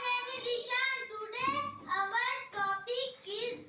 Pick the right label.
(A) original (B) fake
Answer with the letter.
A